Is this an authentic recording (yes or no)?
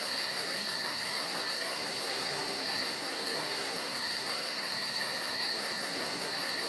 no